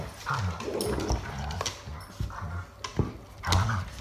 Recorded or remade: recorded